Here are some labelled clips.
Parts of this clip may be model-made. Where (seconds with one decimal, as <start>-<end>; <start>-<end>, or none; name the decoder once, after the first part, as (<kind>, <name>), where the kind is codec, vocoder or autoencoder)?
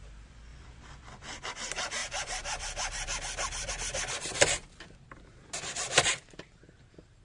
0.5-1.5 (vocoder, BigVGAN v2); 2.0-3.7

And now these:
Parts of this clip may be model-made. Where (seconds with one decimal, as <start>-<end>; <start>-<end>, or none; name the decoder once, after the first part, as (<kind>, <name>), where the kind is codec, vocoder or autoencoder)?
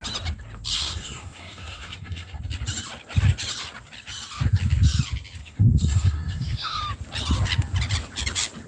0.7-2.4 (codec, SNAC); 5.4-6.8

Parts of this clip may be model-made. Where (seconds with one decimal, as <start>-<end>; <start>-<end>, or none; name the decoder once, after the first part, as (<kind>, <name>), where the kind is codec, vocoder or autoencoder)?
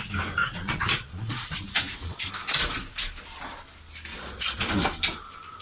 0.4-2.3 (vocoder, Vocos); 4.1-4.7